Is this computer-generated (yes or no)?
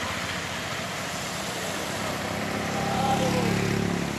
no